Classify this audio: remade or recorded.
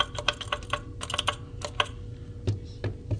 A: recorded